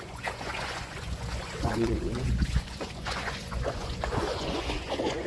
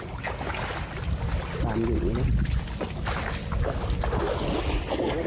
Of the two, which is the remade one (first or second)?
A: first